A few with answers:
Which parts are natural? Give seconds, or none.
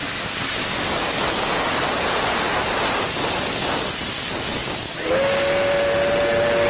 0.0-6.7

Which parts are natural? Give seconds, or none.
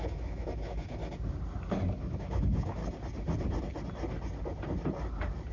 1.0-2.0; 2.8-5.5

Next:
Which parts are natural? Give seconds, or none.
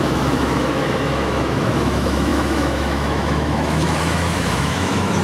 none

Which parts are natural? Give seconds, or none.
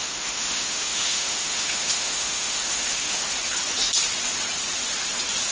3.2-5.5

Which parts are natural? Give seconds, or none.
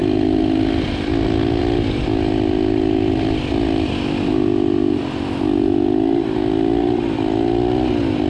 0.0-8.3